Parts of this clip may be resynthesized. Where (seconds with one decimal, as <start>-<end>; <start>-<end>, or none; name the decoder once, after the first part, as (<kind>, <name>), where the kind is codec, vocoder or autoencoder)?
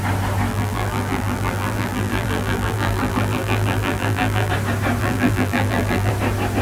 0.5-4.5 (vocoder, BigVGAN v2); 5.0-6.1